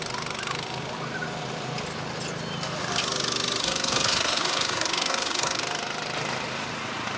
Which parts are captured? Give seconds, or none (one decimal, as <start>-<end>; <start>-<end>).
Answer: 0.0-3.6; 5.6-7.2